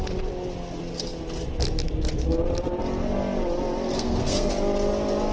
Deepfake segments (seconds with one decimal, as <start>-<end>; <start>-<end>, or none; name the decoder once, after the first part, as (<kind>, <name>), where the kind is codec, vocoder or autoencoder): 3.9-4.5 (codec, SNAC)